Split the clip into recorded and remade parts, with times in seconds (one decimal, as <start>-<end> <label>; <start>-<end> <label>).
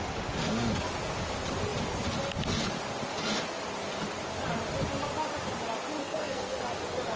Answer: 0.0-6.0 recorded; 6.0-6.6 remade; 6.6-7.2 recorded